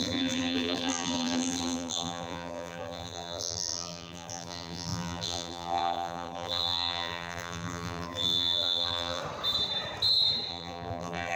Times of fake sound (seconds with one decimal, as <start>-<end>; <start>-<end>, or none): 0.0-9.2; 10.5-11.4